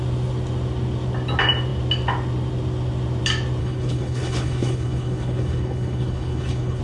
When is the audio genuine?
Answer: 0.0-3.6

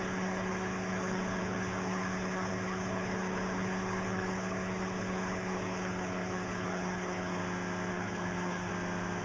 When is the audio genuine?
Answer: 7.4-7.9; 8.7-9.2

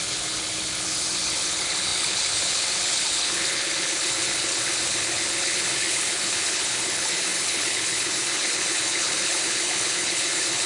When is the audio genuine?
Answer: none

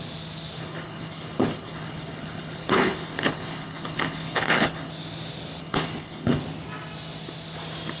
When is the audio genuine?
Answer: 0.0-0.6; 4.9-5.6; 6.4-8.0

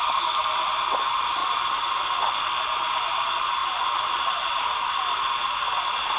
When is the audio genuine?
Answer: 0.0-6.2